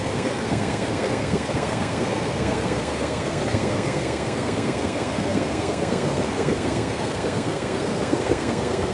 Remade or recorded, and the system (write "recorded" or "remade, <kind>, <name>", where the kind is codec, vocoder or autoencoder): remade, codec, SNAC